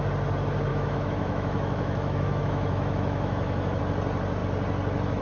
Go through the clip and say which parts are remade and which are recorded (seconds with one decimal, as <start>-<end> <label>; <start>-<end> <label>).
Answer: 0.0-0.7 recorded; 0.7-3.8 remade; 3.8-5.2 recorded